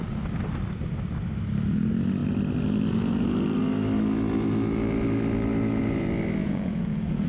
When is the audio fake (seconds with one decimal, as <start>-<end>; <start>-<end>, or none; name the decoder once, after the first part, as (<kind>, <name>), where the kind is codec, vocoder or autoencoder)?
6.4-7.3 (vocoder, Vocos)